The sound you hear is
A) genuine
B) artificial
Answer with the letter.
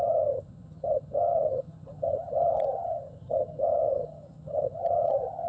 B